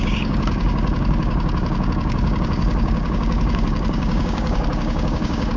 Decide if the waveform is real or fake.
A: fake